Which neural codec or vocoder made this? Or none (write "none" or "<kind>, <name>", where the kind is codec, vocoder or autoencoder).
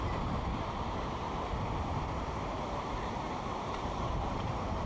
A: vocoder, BigVGAN v2